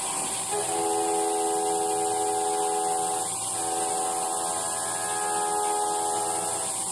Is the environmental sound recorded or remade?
recorded